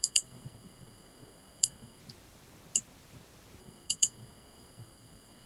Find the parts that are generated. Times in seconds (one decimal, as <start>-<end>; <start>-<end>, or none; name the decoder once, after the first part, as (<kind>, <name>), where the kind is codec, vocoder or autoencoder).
0.0-2.0 (codec, SNAC); 3.6-5.5